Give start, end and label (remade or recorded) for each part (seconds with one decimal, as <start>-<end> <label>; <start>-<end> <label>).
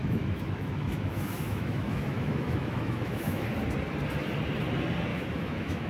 0.0-3.5 remade; 3.5-5.1 recorded; 5.1-5.9 remade